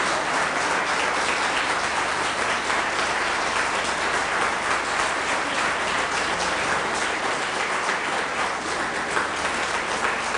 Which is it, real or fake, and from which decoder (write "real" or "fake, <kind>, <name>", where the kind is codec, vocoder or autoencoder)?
real